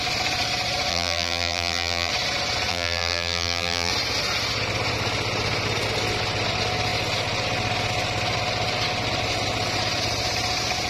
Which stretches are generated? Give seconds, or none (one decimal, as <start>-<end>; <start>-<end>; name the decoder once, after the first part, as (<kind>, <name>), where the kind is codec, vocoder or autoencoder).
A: 0.9-2.1 (vocoder, BigVGAN v2); 2.7-3.9